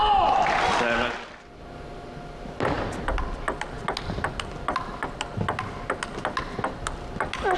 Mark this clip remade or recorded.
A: recorded